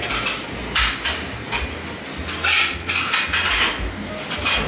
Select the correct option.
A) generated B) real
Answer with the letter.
B